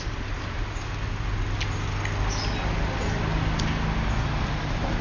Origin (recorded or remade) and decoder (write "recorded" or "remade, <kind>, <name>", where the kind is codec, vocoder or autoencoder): recorded